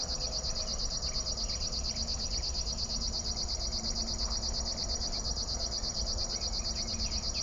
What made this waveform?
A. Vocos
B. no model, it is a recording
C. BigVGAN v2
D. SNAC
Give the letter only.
B